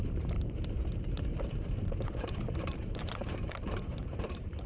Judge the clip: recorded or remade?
remade